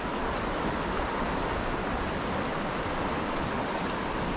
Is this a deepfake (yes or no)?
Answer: no